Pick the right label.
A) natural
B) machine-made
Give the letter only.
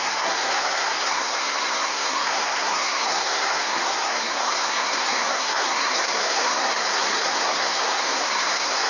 B